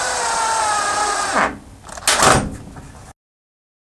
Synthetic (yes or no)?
no